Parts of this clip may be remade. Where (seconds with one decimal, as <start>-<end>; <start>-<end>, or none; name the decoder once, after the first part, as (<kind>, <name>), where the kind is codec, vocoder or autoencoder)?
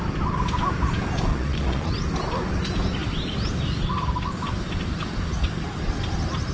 1.3-1.9 (vocoder, Vocos)